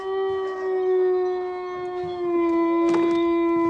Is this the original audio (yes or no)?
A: yes